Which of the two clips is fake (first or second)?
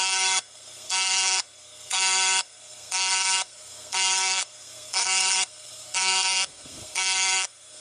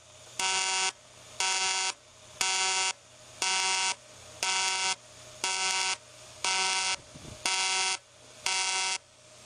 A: first